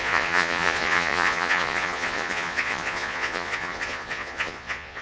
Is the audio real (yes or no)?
no